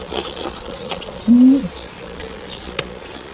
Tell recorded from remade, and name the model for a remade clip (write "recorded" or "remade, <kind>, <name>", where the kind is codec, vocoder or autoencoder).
remade, vocoder, Vocos